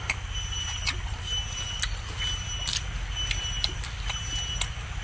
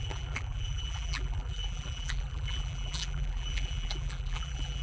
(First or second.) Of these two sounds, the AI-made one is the second